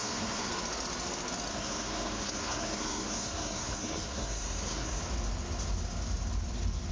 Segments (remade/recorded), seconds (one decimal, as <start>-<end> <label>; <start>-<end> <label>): 0.0-0.5 remade; 0.5-1.5 recorded; 1.5-5.0 remade; 5.0-6.9 recorded